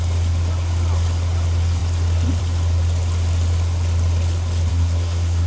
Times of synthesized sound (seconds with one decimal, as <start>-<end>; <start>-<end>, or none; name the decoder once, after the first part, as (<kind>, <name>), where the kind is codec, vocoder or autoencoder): 4.7-5.5 (codec, SNAC)